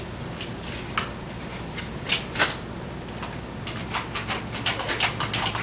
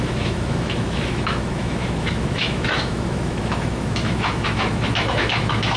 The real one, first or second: first